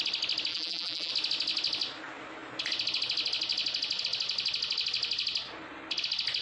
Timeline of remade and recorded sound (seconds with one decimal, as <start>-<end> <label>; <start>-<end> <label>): 0.0-0.5 recorded; 0.5-1.1 remade; 1.1-6.4 recorded